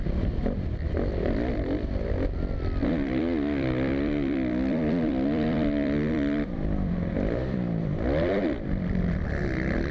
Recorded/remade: remade